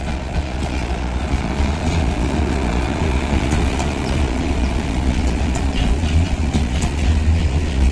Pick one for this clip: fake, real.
fake